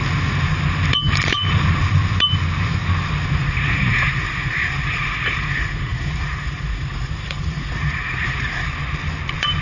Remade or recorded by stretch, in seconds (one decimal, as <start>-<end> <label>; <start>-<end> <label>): 0.0-3.4 recorded; 3.4-8.6 remade; 8.6-9.6 recorded